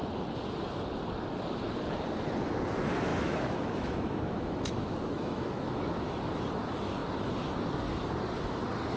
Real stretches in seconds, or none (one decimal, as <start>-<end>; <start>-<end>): 0.0-3.1; 6.2-9.0